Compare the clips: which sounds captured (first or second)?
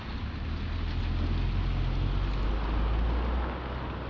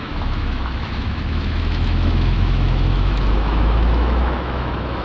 first